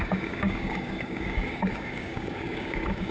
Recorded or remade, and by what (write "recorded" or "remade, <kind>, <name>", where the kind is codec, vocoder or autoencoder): remade, codec, DAC